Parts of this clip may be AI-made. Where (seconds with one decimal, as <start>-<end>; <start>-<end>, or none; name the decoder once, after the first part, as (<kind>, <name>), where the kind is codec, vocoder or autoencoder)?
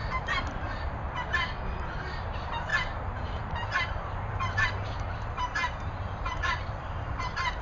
0.0-1.0 (vocoder, BigVGAN v2); 2.7-7.6